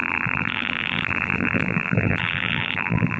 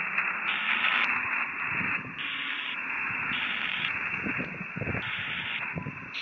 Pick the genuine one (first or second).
second